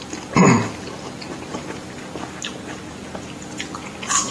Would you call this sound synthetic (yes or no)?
no